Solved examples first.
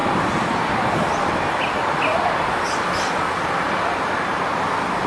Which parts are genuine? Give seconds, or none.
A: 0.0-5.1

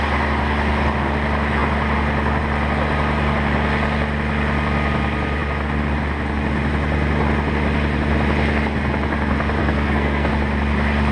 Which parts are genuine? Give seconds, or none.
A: 0.0-9.6; 10.3-11.1

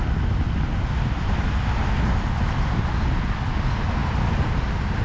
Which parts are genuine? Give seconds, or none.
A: 0.0-5.0

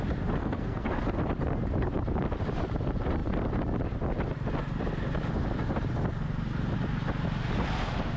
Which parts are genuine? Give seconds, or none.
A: 0.0-0.4; 1.0-8.2